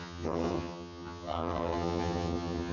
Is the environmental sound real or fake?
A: fake